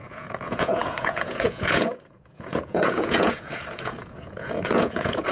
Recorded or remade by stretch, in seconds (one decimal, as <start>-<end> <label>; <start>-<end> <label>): 0.0-5.3 remade